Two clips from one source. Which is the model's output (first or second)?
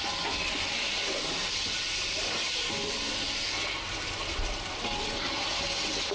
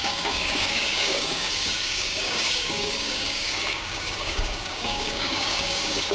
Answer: second